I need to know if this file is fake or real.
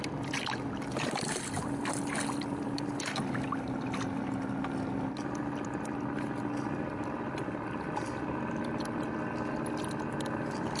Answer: real